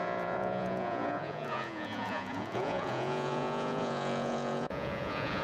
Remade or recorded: remade